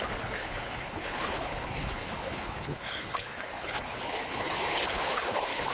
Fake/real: fake